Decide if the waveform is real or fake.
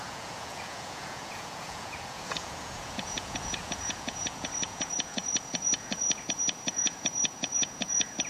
fake